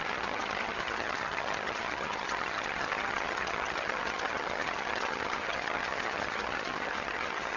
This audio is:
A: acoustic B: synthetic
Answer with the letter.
B